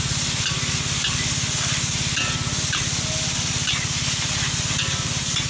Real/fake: real